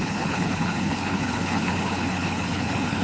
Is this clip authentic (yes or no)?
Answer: no